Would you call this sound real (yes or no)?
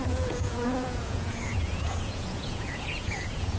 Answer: no